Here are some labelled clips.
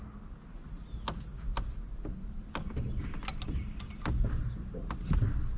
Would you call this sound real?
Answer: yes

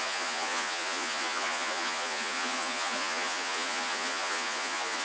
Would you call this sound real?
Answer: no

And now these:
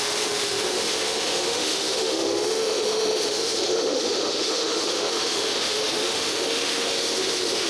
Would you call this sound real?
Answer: no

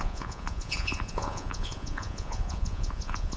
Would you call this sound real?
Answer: no